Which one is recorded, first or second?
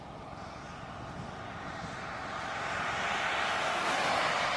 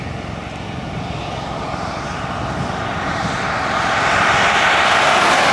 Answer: first